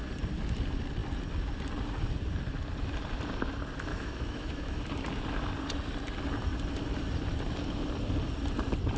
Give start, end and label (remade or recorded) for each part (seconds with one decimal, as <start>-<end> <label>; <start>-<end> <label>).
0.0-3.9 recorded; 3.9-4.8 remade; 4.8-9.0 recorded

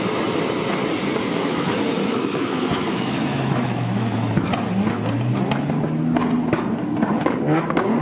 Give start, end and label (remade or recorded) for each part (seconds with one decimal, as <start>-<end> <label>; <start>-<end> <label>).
0.0-1.3 recorded; 1.3-4.3 remade; 4.3-8.0 recorded

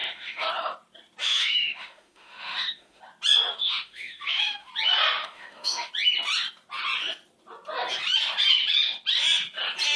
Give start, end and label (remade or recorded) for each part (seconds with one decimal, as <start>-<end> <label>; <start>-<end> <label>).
0.0-0.5 remade; 0.5-1.2 recorded; 1.2-3.0 remade; 3.0-3.5 recorded; 3.5-4.7 remade; 4.7-5.2 recorded; 5.2-5.9 remade; 5.9-10.0 recorded

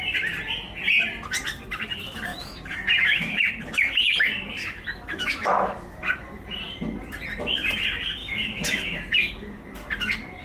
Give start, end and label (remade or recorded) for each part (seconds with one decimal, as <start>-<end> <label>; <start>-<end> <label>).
0.0-2.3 recorded; 2.3-3.5 remade; 3.5-4.6 recorded; 4.6-6.1 remade; 6.1-8.2 recorded; 8.2-9.3 remade; 9.3-10.4 recorded